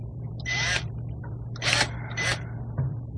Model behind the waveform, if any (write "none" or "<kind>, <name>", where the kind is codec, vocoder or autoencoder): vocoder, BigVGAN v2